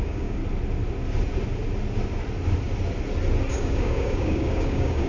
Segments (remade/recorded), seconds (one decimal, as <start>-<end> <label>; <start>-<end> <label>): 0.0-0.4 remade; 0.4-3.5 recorded; 3.5-5.1 remade